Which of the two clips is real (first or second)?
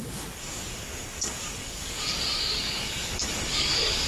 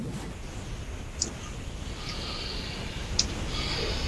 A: second